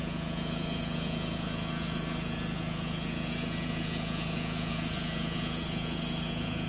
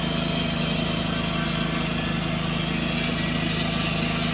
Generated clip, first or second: first